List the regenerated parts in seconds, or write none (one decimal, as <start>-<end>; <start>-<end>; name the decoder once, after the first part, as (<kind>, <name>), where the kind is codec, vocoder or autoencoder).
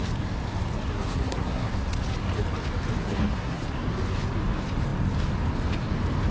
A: 0.9-1.7 (codec, SNAC); 3.0-3.6